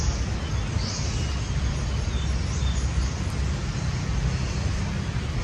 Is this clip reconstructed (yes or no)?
no